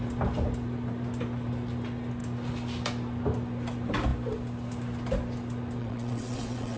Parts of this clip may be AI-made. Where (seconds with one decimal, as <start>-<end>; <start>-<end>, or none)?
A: 5.8-6.8